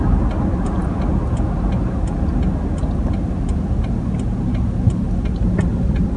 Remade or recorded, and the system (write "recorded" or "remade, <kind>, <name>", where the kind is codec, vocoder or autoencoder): recorded